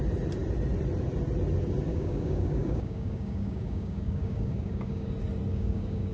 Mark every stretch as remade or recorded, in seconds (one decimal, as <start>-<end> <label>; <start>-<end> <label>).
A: 0.0-1.9 recorded; 1.9-5.1 remade; 5.1-5.5 recorded; 5.5-6.1 remade